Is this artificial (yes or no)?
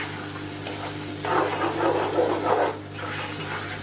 no